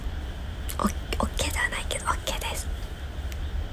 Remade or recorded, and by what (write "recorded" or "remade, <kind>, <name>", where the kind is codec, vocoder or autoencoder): recorded